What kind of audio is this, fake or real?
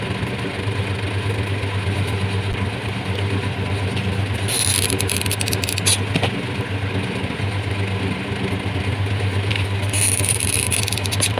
real